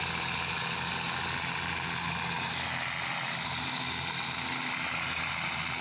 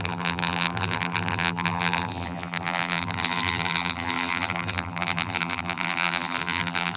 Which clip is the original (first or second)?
first